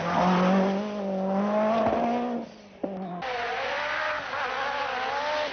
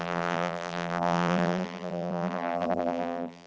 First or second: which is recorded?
first